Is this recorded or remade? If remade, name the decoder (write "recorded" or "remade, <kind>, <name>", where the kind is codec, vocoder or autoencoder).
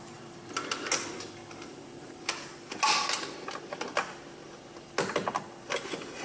recorded